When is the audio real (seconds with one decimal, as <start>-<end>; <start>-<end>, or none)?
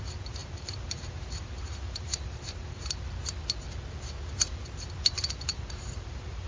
0.0-0.4; 2.8-5.5